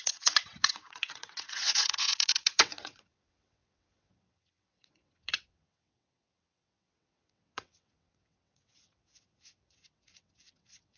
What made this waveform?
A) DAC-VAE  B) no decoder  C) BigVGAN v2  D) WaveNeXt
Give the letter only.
D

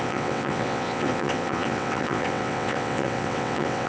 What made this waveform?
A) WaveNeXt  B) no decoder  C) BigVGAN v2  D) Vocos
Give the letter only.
A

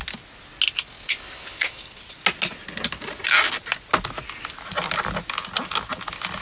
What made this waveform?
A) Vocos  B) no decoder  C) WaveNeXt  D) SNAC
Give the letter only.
B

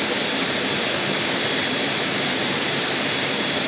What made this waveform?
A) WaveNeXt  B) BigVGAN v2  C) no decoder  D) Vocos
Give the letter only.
C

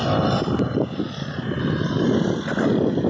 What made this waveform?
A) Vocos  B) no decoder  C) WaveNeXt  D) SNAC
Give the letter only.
B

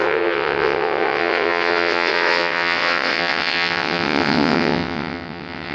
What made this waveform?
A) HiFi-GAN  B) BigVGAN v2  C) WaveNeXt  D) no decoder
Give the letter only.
C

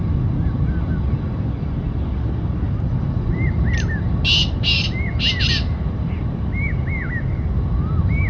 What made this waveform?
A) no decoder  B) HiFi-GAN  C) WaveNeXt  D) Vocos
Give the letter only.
A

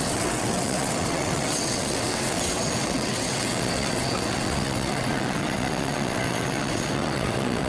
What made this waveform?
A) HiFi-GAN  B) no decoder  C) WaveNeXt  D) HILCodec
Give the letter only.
C